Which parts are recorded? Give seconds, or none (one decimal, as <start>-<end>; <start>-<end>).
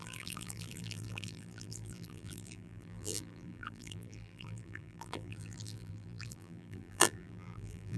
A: none